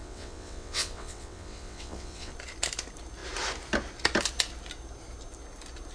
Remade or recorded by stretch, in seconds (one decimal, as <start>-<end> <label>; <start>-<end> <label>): 0.0-2.3 remade; 2.3-5.9 recorded

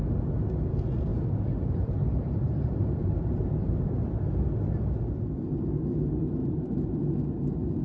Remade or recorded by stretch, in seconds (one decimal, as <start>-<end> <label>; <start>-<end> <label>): 0.0-1.1 recorded; 1.1-3.7 remade; 3.7-6.4 recorded; 6.4-7.0 remade; 7.0-7.8 recorded

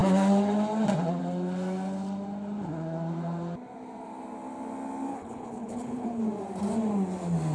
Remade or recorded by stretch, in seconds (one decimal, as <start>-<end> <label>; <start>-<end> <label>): 0.0-5.1 recorded; 5.1-6.2 remade; 6.2-7.5 recorded

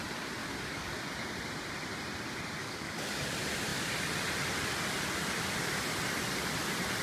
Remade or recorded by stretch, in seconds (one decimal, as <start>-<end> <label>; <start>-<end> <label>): 0.0-0.4 recorded; 0.4-1.0 remade; 1.0-2.6 recorded; 2.6-3.3 remade; 3.3-7.0 recorded

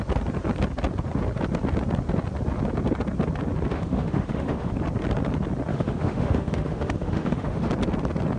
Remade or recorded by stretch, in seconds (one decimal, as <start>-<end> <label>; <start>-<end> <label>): 0.0-3.7 recorded; 3.7-4.7 remade; 4.7-5.7 recorded; 5.7-7.7 remade; 7.7-8.4 recorded

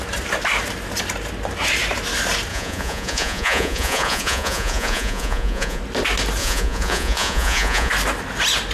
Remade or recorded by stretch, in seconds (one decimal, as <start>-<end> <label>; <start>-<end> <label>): 0.0-2.5 recorded; 2.5-5.8 remade; 5.8-6.4 recorded; 6.4-7.9 remade; 7.9-8.7 recorded